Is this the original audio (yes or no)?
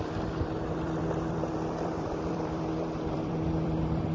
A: no